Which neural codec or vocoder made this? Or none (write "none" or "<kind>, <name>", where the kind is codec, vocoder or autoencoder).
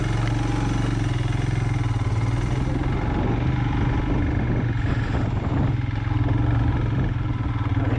none